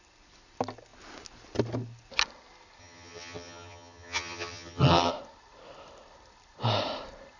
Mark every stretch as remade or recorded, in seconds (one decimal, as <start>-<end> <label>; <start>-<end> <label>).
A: 0.0-2.8 recorded; 2.8-5.1 remade; 5.1-7.4 recorded